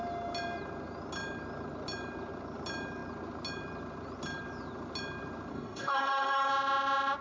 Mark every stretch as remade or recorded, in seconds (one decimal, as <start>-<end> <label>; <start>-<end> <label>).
0.0-5.5 recorded; 5.5-6.5 remade; 6.5-7.2 recorded